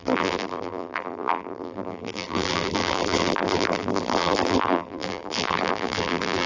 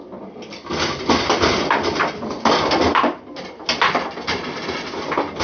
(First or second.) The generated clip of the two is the first